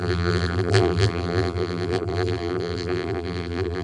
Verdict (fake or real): fake